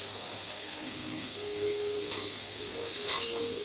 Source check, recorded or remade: remade